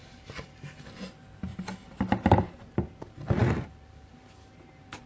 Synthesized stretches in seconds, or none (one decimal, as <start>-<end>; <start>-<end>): 0.0-0.9; 1.5-2.9; 3.4-4.1

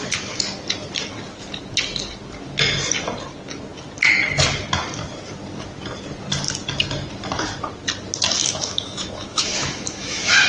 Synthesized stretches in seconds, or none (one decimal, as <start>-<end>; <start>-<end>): 8.4-10.5

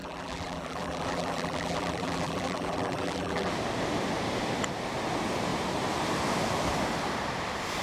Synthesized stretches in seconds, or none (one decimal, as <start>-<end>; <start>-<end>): 0.0-3.5

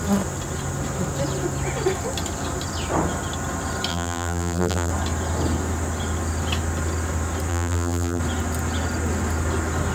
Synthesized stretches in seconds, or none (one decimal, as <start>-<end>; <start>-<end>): 3.9-4.9; 7.5-8.2

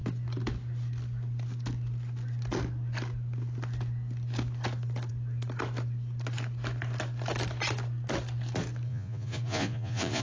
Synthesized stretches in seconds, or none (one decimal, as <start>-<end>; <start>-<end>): 8.9-10.2

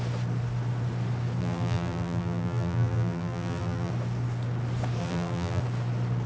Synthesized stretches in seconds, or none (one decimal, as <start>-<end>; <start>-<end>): 1.4-3.9; 5.0-5.6

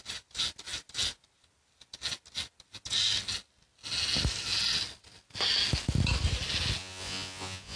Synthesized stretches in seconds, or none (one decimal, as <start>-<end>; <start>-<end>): 6.8-7.8

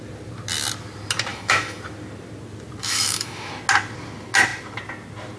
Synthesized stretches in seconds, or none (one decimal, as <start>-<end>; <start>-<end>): 1.3-1.8; 2.8-3.5